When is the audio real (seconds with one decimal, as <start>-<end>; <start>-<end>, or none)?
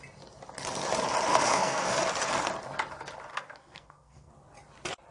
0.0-1.3; 2.0-3.3; 4.3-5.1